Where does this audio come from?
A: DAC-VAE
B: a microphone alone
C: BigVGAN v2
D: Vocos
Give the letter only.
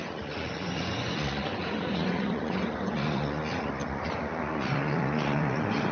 D